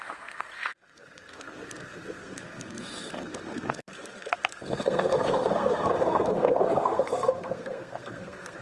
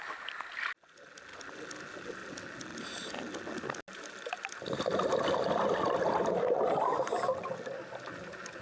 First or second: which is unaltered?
second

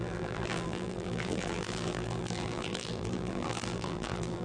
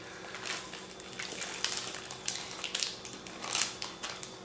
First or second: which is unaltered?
second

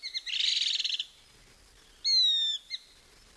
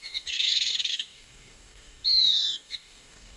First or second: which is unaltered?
first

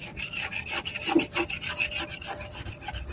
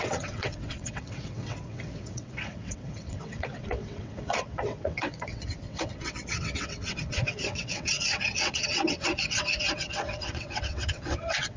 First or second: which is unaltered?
first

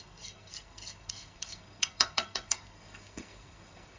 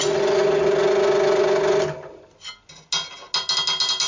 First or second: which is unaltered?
second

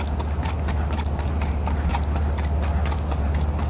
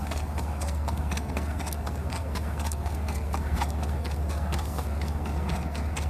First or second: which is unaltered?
first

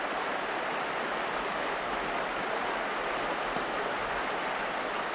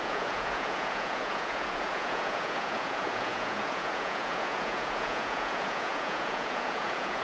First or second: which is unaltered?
first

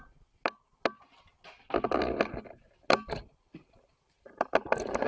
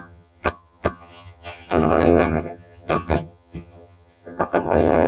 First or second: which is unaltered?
first